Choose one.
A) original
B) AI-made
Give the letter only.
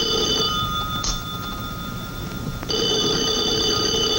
B